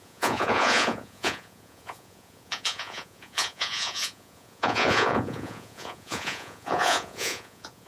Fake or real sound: fake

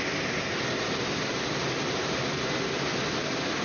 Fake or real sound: real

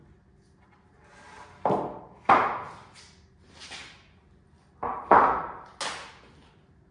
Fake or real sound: real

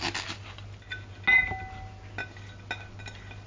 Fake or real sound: real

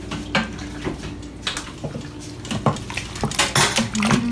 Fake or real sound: real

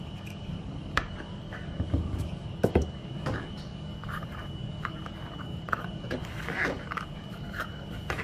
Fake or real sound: fake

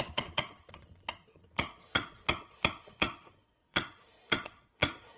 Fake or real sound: fake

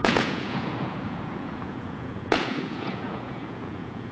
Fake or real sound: fake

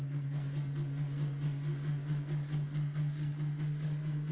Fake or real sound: fake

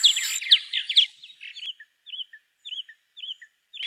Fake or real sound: real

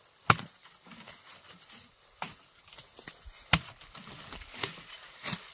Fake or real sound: real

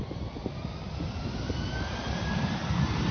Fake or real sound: fake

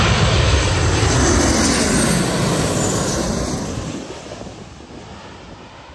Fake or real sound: real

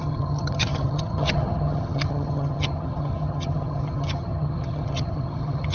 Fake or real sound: fake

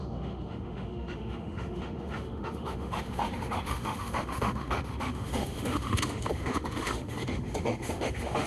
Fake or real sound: fake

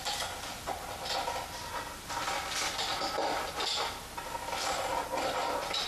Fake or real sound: real